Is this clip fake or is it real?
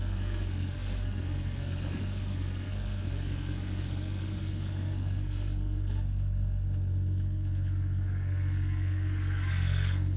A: fake